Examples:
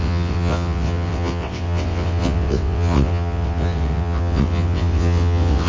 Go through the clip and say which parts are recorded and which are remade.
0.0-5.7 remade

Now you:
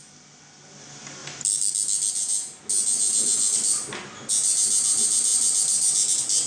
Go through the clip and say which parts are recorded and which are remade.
0.0-6.5 recorded

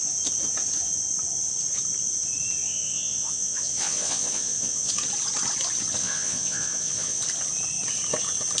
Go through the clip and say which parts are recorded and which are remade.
0.0-2.6 recorded; 2.6-4.9 remade; 4.9-6.0 recorded; 6.0-7.2 remade; 7.2-8.6 recorded

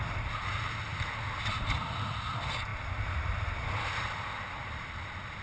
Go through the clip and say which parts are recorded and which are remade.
0.0-5.4 recorded

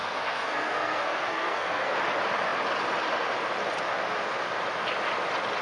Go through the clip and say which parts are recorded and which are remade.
0.0-2.0 remade; 2.0-5.6 recorded

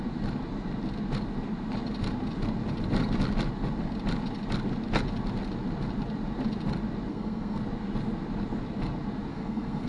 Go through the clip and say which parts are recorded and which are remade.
0.0-7.1 recorded; 7.1-7.6 remade; 7.6-9.3 recorded; 9.3-9.9 remade